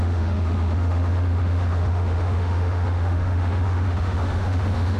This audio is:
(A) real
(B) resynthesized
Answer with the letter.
B